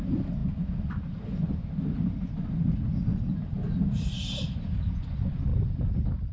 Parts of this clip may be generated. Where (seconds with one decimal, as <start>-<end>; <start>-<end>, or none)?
none